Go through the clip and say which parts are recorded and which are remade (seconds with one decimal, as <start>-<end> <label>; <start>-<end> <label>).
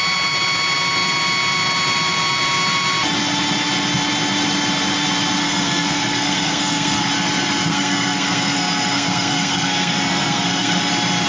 0.0-5.4 recorded; 5.4-7.1 remade; 7.1-7.7 recorded; 7.7-10.9 remade; 10.9-11.3 recorded